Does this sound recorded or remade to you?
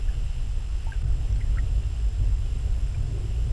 recorded